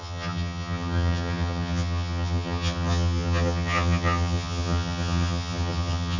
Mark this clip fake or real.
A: fake